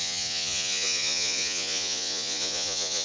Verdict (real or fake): fake